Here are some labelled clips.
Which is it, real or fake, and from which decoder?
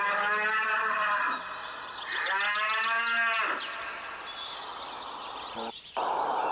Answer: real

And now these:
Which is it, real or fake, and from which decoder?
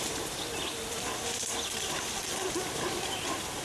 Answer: fake, vocoder, BigVGAN v2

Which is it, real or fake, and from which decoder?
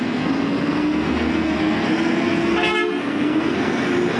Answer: fake, codec, SNAC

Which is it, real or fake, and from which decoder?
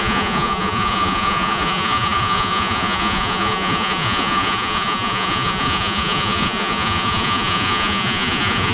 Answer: fake, vocoder, Vocos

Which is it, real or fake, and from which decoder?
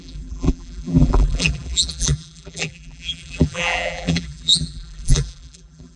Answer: fake, vocoder, BigVGAN v2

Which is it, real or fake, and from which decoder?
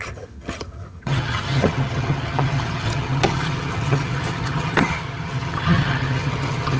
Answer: fake, vocoder, HiFi-GAN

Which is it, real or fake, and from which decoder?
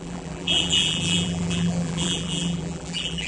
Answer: fake, vocoder, BigVGAN v2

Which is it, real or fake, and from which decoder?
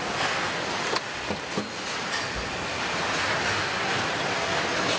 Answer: real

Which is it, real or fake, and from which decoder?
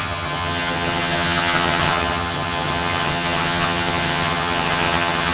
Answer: fake, vocoder, HiFi-GAN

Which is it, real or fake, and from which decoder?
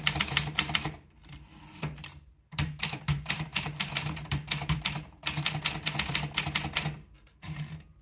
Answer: fake, vocoder, BigVGAN v2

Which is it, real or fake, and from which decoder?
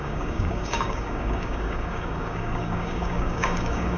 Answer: fake, codec, DAC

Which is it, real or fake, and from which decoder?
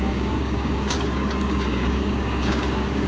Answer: fake, codec, DAC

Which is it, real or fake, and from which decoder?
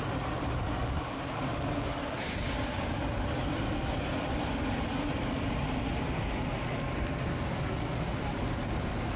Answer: real